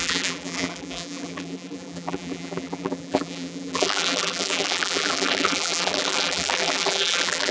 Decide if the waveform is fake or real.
fake